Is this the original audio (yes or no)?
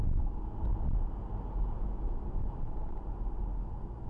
yes